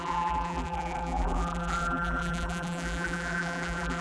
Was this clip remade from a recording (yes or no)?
yes